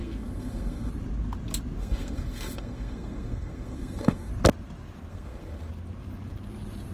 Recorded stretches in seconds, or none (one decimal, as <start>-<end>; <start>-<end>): 0.9-1.8; 4.3-5.1; 5.7-6.9